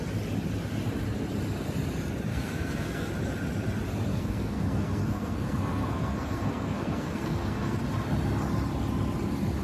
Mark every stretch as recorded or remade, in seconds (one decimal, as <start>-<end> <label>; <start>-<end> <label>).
0.0-2.3 recorded; 2.3-3.1 remade; 3.1-4.1 recorded; 4.1-7.8 remade; 7.8-9.6 recorded